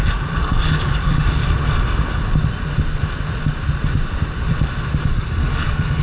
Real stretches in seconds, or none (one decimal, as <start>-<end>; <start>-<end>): 1.4-5.0